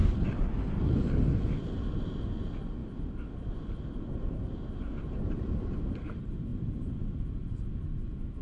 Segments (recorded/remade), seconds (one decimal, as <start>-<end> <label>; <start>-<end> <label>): 0.0-8.4 recorded